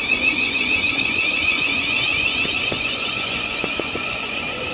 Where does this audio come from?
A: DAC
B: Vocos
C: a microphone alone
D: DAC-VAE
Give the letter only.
B